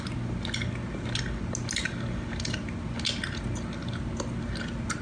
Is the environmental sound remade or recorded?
recorded